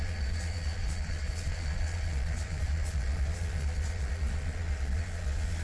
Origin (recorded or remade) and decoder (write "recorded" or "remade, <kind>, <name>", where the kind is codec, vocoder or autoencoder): remade, vocoder, Vocos